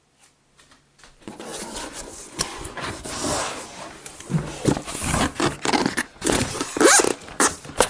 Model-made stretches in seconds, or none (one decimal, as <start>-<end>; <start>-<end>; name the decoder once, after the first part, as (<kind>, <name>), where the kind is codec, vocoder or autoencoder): 1.5-3.1 (vocoder, Vocos); 5.8-6.4